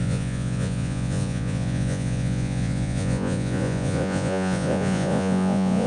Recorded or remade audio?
remade